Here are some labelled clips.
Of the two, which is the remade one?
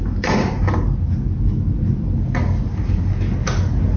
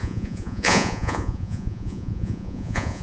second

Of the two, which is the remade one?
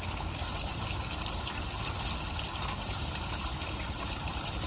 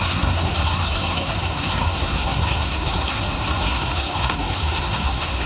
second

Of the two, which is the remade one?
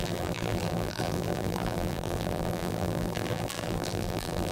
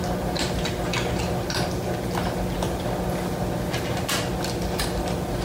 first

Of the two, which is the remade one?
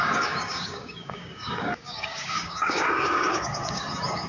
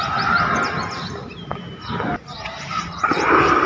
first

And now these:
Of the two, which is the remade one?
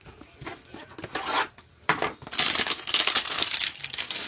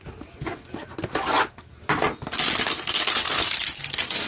first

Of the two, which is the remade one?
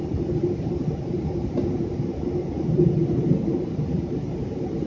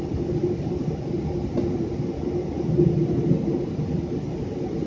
first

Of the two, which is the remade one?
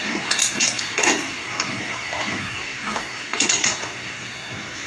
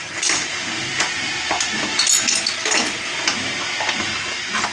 first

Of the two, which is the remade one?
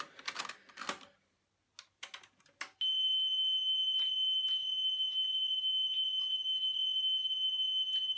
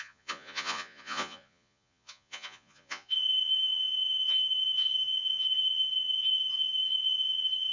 second